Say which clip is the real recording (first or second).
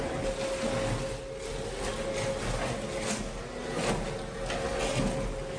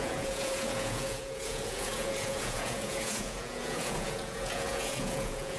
first